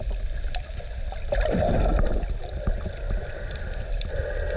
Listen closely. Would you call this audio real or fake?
real